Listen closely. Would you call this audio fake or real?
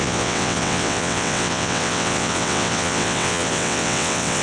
fake